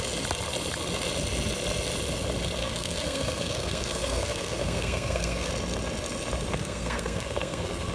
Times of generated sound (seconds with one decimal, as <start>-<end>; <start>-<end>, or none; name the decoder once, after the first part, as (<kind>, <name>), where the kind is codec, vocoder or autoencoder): 2.6-5.5 (codec, SNAC); 6.5-7.9